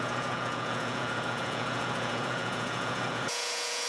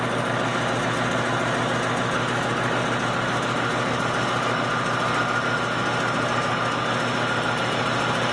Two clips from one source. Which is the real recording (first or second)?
second